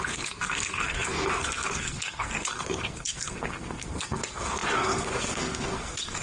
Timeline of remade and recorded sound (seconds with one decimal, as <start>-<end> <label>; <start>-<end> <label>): 0.0-6.2 remade